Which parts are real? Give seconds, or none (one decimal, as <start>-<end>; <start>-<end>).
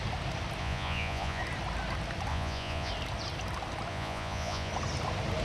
0.0-0.6; 1.4-2.3; 2.9-3.9; 4.7-5.4